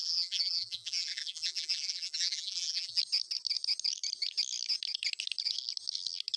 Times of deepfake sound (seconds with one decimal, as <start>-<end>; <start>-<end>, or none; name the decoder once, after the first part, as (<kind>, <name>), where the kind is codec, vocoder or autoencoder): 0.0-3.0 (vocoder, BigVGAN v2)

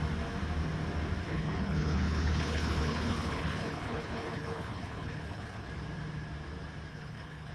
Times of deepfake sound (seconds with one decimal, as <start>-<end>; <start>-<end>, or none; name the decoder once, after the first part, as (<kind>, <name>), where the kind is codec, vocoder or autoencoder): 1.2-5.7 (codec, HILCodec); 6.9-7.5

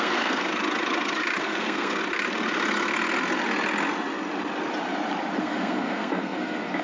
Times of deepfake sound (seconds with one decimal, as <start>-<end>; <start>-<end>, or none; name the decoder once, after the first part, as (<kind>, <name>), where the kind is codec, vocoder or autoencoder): 0.0-0.5 (codec, SNAC); 1.4-2.0; 5.4-6.8

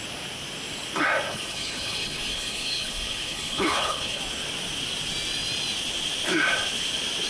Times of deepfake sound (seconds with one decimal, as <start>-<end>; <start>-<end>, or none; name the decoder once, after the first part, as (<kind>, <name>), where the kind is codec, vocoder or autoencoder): 1.3-4.2 (codec, HILCodec)

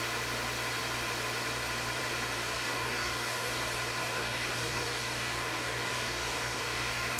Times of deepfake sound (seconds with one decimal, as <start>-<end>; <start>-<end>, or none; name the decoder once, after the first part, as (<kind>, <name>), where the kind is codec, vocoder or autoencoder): 2.4-3.6 (codec, DAC); 4.0-7.2

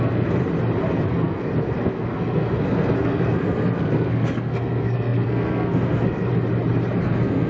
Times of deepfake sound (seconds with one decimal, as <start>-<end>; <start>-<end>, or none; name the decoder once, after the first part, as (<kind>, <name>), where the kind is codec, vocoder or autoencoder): 0.0-0.4 (codec, SNAC); 1.1-6.3; 7.0-7.5